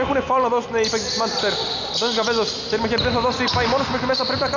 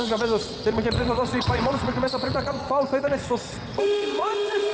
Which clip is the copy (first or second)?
second